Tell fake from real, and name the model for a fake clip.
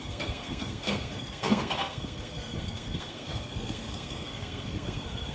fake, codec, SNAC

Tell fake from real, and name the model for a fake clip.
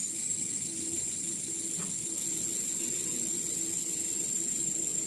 real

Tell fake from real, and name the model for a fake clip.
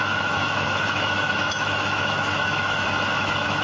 fake, autoencoder, DAC-VAE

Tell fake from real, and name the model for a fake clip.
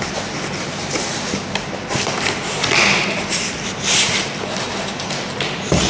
real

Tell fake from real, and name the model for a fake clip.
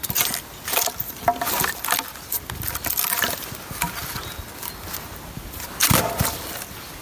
real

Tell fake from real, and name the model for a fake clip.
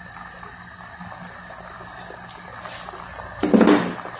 real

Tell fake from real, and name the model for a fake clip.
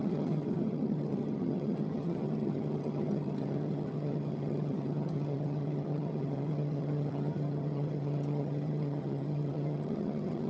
fake, vocoder, HiFi-GAN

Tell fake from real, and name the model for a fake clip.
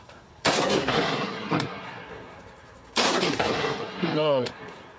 fake, codec, SNAC